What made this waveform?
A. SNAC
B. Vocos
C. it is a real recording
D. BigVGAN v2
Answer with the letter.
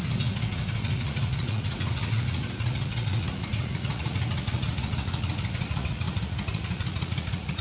B